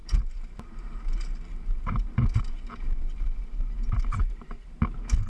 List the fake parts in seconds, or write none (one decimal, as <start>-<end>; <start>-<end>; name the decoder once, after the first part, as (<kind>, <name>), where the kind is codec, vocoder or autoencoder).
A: 0.0-3.2 (vocoder, BigVGAN v2); 4.2-4.8